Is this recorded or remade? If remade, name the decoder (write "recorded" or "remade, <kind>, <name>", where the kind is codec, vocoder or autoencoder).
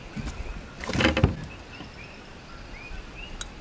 recorded